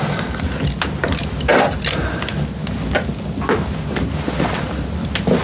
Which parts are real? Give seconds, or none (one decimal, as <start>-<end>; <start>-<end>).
0.0-5.4